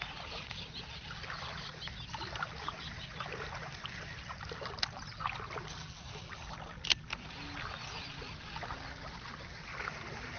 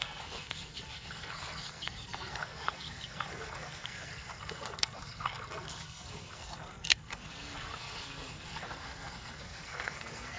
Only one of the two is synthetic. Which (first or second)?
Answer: second